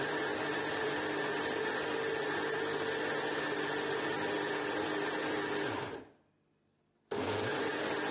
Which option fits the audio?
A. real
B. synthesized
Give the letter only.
A